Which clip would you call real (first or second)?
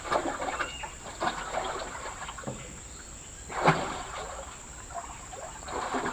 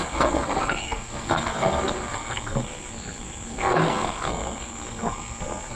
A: first